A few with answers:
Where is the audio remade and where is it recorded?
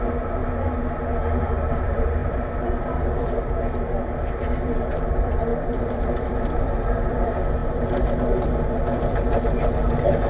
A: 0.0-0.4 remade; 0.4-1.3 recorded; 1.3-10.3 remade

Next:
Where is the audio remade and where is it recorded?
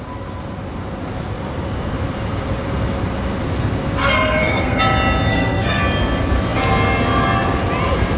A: 0.0-4.0 recorded; 4.0-4.8 remade; 4.8-5.3 recorded; 5.3-5.8 remade; 5.8-8.2 recorded